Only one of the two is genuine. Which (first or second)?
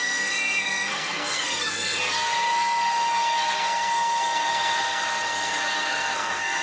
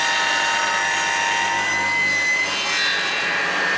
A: second